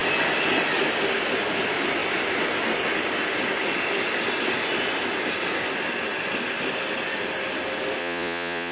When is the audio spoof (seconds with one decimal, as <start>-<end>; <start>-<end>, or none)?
8.0-8.7